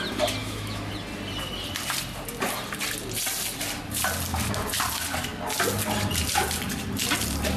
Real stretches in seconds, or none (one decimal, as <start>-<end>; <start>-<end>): 0.0-0.4; 0.9-7.6